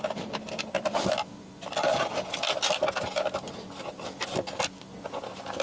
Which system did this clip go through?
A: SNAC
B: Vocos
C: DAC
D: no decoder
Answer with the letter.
D